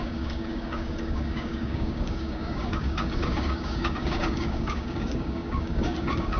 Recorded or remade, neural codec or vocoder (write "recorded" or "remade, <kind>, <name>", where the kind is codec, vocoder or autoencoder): remade, codec, DAC